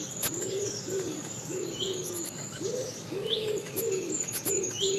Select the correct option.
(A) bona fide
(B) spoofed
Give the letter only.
B